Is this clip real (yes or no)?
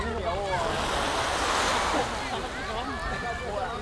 yes